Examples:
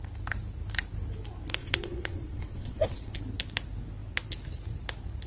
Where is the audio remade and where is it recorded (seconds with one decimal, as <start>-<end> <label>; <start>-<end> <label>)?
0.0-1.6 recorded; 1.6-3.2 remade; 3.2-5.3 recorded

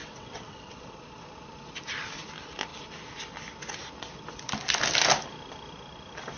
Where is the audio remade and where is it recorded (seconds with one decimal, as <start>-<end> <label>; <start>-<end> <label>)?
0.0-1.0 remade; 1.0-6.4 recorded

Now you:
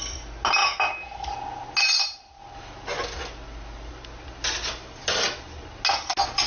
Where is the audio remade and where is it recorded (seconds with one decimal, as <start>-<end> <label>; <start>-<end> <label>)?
0.0-0.6 recorded; 0.6-1.3 remade; 1.3-6.5 recorded

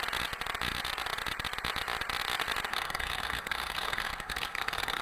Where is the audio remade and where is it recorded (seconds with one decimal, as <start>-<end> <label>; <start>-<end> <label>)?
0.0-2.7 recorded; 2.7-5.0 remade

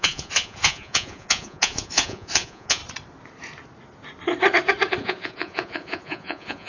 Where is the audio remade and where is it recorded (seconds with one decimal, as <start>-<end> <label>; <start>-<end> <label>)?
0.0-2.8 remade; 2.8-4.9 recorded; 4.9-6.7 remade